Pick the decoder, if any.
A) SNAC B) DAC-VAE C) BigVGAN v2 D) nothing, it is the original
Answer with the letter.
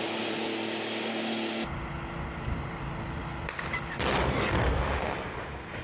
D